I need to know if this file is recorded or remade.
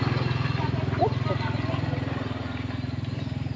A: recorded